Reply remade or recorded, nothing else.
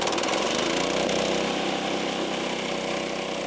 recorded